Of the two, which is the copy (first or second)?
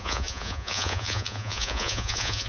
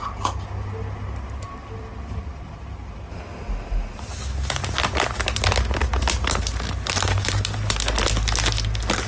first